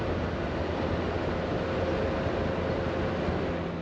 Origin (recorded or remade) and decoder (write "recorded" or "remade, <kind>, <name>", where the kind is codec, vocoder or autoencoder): recorded